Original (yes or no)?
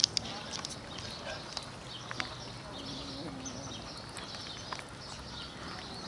yes